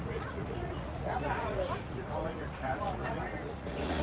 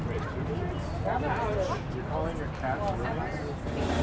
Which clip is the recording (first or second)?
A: second